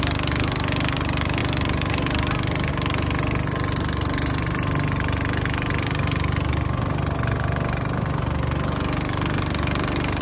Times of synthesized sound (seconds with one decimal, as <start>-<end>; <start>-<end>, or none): none